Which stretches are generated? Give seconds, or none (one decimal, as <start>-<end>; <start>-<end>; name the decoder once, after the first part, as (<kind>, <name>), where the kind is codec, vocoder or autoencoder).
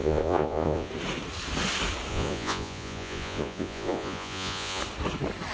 0.0-0.9 (vocoder, Vocos); 2.1-4.8